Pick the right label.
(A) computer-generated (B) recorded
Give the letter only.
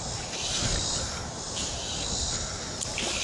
B